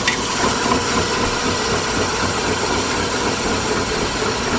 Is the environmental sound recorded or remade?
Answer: recorded